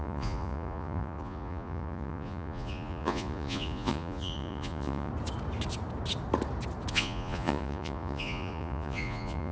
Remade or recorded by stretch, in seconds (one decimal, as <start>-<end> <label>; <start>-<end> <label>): 0.0-5.1 remade; 5.1-6.9 recorded; 6.9-9.5 remade